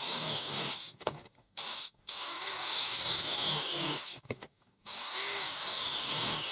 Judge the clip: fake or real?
fake